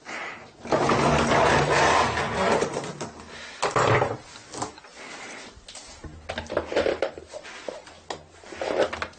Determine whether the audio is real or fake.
real